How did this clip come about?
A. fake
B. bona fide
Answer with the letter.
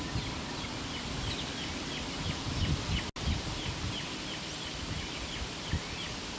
B